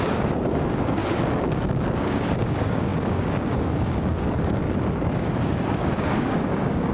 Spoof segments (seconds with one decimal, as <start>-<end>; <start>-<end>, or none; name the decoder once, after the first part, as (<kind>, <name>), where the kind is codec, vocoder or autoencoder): 0.0-1.0 (codec, DAC); 1.5-6.9